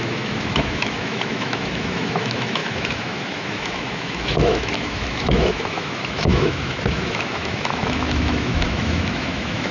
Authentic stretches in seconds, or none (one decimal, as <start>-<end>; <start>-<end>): none